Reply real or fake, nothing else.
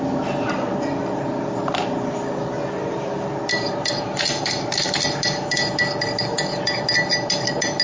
real